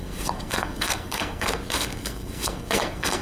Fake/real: fake